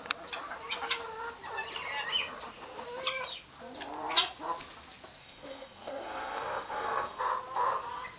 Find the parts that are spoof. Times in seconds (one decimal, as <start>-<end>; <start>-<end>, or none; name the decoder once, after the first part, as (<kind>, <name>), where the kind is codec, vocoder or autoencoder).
5.2-7.2 (codec, SNAC)